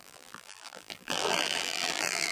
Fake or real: fake